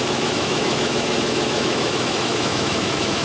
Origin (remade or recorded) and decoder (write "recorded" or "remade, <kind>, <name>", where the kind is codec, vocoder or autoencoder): remade, autoencoder, DAC-VAE